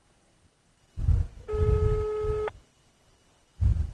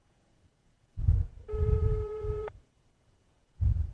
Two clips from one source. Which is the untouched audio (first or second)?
first